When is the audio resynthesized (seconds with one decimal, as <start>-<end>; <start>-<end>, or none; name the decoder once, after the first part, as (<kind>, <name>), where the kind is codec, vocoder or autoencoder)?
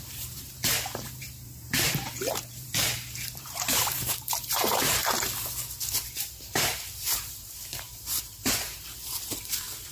0.0-5.0 (vocoder, BigVGAN v2); 5.9-9.9